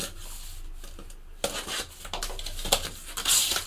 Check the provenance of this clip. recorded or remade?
recorded